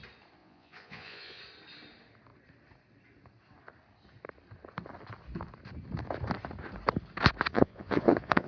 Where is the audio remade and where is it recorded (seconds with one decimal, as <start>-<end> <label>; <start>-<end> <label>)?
0.0-0.4 recorded; 0.4-1.4 remade; 1.4-7.5 recorded; 7.5-8.5 remade